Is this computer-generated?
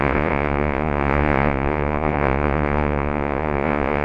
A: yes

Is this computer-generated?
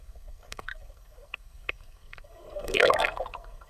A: yes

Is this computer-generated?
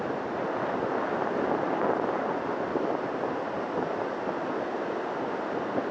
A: no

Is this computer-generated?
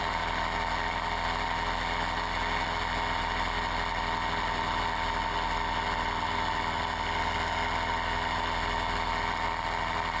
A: no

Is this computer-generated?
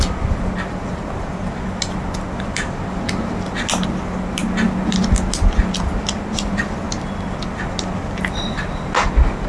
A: no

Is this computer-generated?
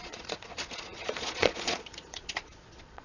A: yes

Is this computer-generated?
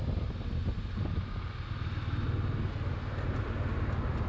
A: no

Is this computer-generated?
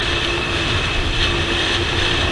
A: no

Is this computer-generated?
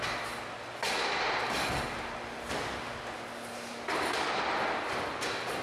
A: no